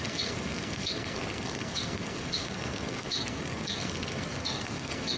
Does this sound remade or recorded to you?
remade